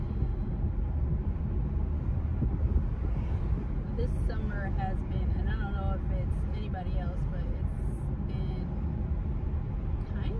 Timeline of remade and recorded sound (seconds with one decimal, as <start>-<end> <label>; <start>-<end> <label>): 0.0-10.4 recorded